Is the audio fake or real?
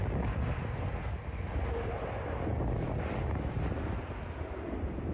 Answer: real